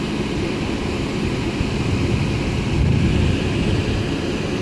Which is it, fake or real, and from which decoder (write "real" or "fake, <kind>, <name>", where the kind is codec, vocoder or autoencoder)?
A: real